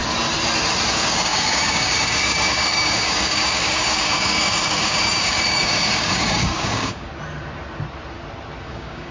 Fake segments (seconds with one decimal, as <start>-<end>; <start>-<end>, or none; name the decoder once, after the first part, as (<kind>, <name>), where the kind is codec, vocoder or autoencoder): 0.9-7.1 (codec, DAC); 8.6-9.1